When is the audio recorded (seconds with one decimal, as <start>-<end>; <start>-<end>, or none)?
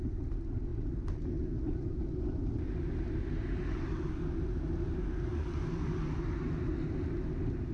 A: 0.0-7.7